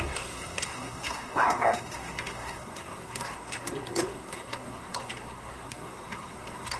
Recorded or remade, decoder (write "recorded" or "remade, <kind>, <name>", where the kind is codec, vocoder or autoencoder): remade, codec, SNAC